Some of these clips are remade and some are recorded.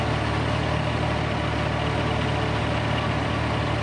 recorded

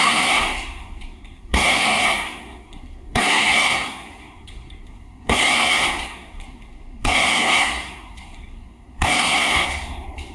remade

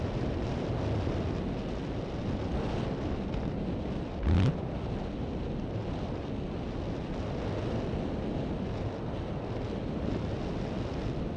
recorded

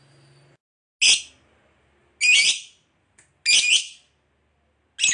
recorded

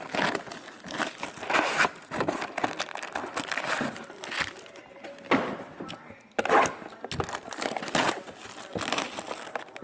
recorded